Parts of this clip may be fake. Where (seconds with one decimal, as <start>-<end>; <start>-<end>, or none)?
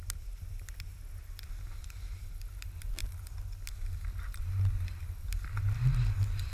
none